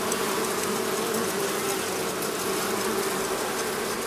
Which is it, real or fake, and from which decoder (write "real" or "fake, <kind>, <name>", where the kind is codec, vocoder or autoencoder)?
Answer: real